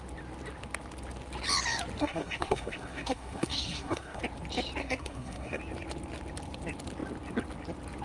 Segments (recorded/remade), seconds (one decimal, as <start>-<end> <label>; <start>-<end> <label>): 0.0-2.0 recorded; 2.0-4.2 remade; 4.2-4.8 recorded; 4.8-5.6 remade; 5.6-8.0 recorded